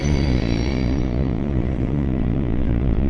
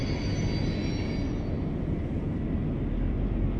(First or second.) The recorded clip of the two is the second